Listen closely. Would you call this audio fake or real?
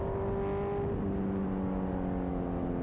real